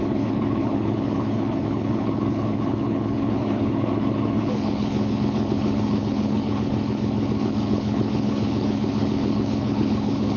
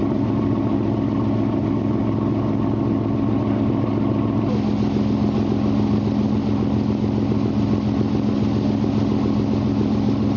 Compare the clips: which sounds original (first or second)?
second